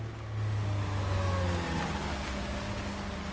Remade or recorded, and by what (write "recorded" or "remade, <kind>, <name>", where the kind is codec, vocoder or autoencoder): recorded